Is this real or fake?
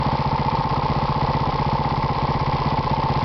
real